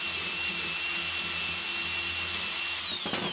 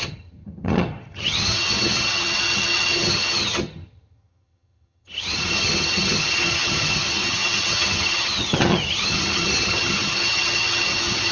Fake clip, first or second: second